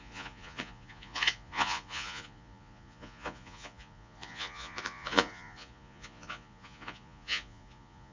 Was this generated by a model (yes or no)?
yes